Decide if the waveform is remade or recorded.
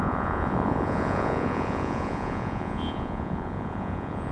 remade